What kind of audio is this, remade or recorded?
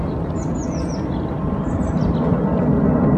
recorded